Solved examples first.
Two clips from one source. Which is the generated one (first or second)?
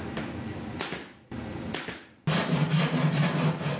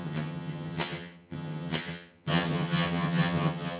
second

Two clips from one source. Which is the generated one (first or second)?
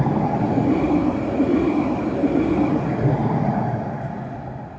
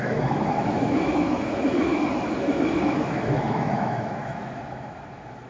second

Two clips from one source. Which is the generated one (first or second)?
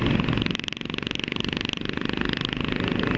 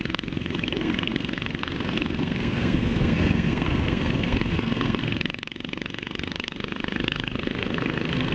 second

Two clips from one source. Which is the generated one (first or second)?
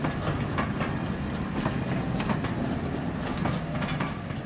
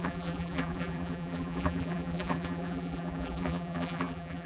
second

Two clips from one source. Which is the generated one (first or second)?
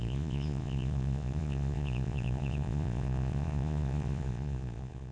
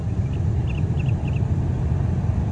first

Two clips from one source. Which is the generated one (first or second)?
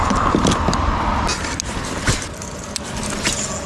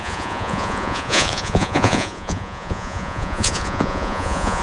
second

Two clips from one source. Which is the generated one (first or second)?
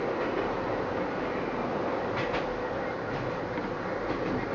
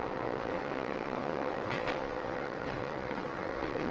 second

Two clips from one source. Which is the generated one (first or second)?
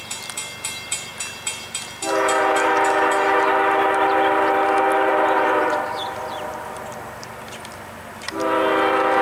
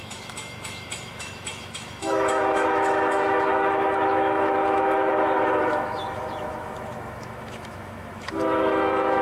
second